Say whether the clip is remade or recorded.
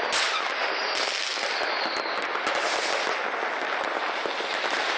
recorded